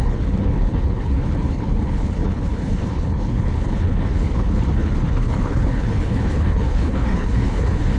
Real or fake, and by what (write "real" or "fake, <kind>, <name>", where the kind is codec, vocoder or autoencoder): fake, codec, HILCodec